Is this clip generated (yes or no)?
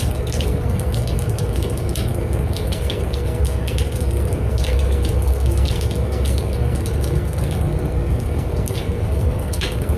yes